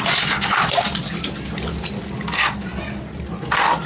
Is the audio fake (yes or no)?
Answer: no